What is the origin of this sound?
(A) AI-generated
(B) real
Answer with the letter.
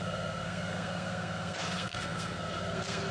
A